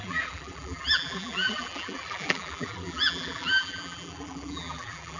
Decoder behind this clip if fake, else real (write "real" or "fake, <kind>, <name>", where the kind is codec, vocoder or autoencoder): fake, vocoder, BigVGAN v2